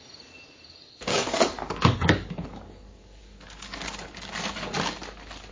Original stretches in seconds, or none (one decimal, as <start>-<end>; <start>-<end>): 0.0-1.1; 4.3-5.5